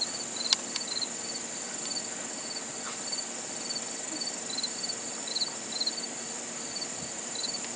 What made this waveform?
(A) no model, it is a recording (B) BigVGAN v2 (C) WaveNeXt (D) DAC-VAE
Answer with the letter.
A